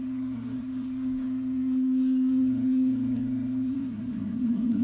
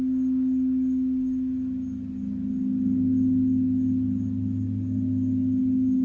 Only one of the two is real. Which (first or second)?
second